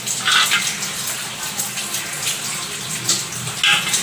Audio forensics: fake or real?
real